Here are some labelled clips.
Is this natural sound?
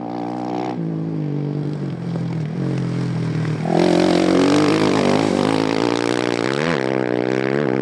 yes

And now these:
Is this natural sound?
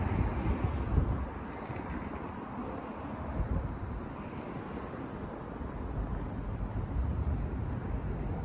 yes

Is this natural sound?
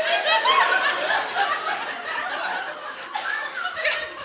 yes